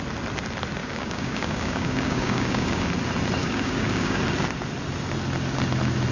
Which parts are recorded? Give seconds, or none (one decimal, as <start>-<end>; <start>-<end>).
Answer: 0.0-0.8; 2.9-3.4; 4.2-6.1